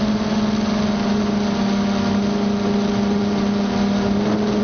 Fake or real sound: real